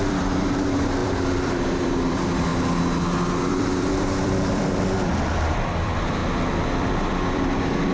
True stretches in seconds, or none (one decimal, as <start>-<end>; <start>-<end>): 2.5-3.5; 6.2-7.1